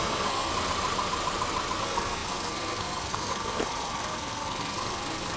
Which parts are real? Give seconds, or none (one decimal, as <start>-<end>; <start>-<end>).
0.5-1.8